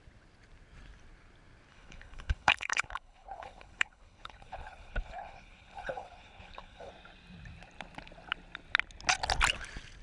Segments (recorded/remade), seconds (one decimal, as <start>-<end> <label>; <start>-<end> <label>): 0.0-1.7 recorded; 1.7-6.9 remade; 6.9-10.0 recorded

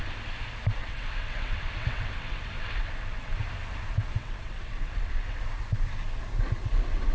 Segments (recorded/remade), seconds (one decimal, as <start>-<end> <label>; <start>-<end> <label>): 0.0-0.8 recorded; 0.8-3.4 remade; 3.4-4.2 recorded; 4.2-5.4 remade; 5.4-7.1 recorded

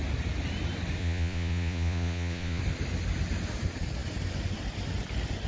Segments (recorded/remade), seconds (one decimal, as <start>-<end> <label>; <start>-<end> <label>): 0.0-1.0 recorded; 1.0-2.6 remade; 2.6-5.5 recorded